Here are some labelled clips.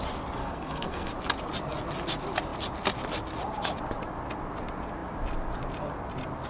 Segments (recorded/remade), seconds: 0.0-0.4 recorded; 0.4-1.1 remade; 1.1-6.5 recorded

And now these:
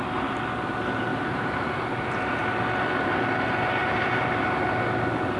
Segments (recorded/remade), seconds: 0.0-1.1 recorded; 1.1-2.1 remade; 2.1-3.8 recorded; 3.8-4.5 remade; 4.5-5.4 recorded

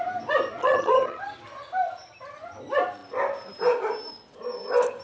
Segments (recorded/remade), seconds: 0.0-0.6 recorded; 0.6-1.2 remade; 1.2-5.0 recorded

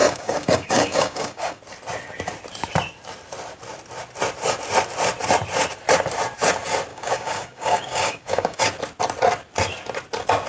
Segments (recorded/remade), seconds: 0.0-1.6 remade; 1.6-6.9 recorded; 6.9-8.6 remade; 8.6-10.5 recorded

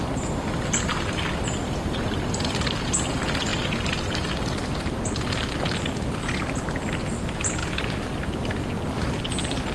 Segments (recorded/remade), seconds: 0.0-9.7 recorded